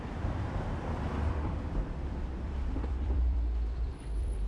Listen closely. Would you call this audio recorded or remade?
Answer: remade